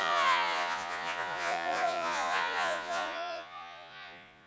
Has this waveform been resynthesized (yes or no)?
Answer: yes